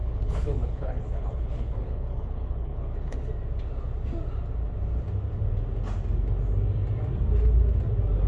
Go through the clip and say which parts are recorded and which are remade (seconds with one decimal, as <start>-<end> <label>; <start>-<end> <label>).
0.0-2.8 remade; 2.8-8.3 recorded